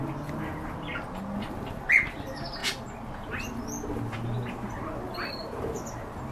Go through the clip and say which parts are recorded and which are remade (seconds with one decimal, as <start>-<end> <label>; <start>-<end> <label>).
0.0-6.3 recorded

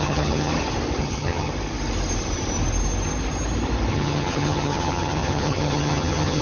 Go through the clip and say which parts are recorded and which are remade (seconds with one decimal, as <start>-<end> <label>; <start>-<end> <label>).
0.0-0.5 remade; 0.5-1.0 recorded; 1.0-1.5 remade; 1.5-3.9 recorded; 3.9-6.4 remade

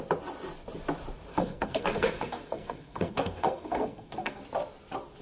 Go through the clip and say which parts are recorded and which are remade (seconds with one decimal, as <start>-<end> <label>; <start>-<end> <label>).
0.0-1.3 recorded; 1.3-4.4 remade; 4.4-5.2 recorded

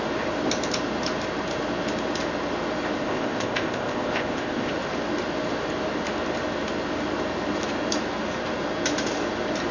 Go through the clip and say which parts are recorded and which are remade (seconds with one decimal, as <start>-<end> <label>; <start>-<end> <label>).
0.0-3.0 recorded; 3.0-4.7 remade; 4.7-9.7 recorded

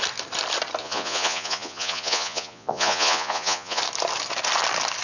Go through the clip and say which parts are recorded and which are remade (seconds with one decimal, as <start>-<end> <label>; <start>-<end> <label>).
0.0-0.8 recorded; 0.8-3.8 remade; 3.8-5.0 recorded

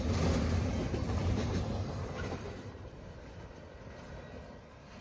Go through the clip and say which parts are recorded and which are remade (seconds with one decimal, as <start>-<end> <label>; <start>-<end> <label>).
0.0-1.2 recorded; 1.2-3.5 remade; 3.5-5.0 recorded